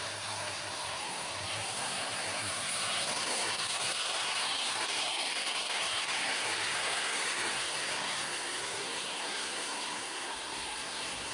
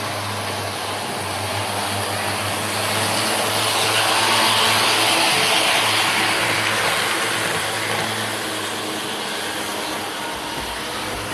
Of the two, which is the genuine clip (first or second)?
second